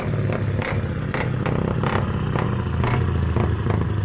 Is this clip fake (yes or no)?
no